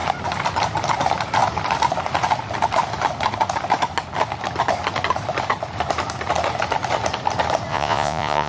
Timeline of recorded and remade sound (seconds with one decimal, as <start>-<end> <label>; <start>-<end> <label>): 0.0-7.7 recorded; 7.7-8.5 remade